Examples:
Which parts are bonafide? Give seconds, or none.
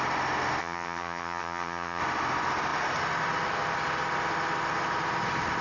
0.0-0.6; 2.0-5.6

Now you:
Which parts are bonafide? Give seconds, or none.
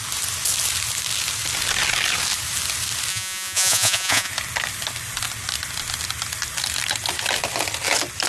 0.0-3.1; 4.3-8.3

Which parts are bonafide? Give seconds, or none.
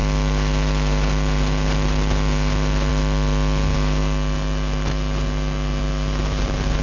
0.0-6.8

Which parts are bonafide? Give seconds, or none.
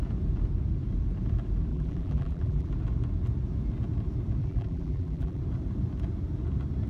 0.0-1.7; 2.7-4.4; 5.4-6.9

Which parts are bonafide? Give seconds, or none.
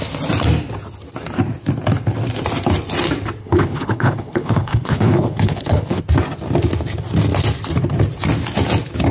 0.0-3.4; 6.0-9.1